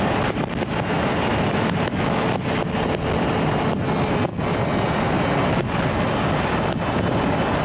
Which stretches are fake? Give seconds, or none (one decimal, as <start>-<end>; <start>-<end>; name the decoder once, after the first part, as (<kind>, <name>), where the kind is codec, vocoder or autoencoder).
1.3-2.2 (autoencoder, DAC-VAE)